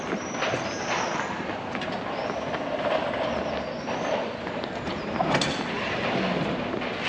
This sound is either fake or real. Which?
real